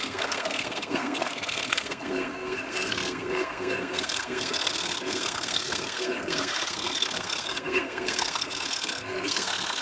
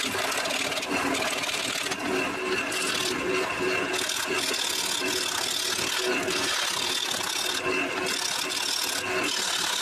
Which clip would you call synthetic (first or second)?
first